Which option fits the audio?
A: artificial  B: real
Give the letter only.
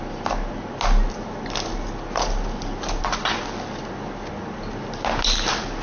B